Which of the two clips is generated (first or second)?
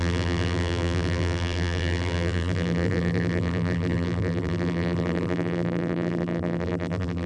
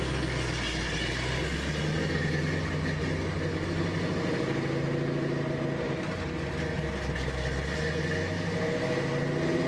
first